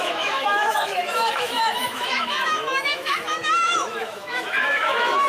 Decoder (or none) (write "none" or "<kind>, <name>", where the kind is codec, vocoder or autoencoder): autoencoder, DAC-VAE